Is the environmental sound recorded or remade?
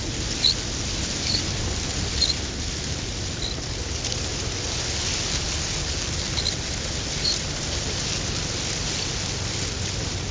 recorded